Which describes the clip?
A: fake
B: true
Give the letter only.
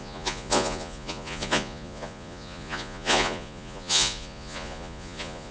A